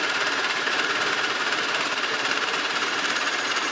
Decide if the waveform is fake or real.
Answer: fake